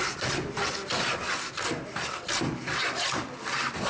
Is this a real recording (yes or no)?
yes